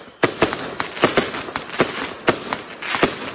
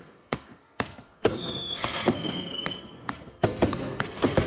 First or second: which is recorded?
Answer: first